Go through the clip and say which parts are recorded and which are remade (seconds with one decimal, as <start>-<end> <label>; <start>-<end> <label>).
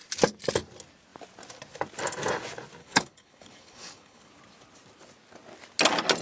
0.0-2.8 recorded; 2.8-4.3 remade; 4.3-6.2 recorded